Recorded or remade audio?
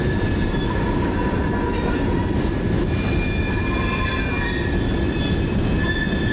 recorded